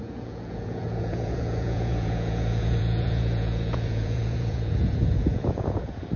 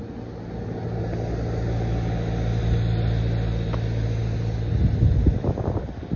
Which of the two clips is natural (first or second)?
second